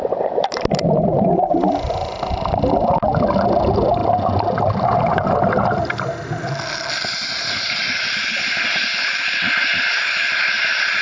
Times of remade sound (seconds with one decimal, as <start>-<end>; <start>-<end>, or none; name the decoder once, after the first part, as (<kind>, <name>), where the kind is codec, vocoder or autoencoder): none